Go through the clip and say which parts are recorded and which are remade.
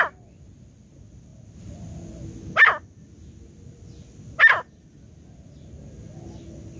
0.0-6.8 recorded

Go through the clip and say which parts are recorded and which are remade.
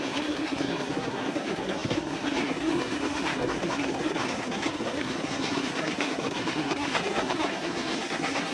0.0-8.5 remade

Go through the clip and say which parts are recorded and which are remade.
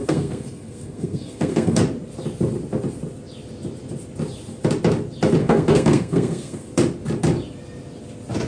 0.0-1.8 remade; 1.8-5.4 recorded; 5.4-6.7 remade; 6.7-8.5 recorded